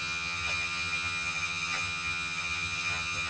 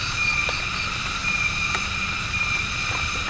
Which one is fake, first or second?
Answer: first